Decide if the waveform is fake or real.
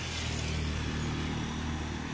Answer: real